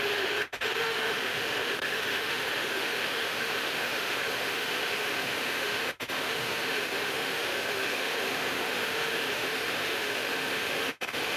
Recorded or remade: remade